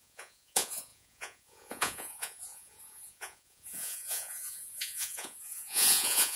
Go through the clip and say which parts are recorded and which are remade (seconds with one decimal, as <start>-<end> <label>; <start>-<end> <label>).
0.0-6.4 remade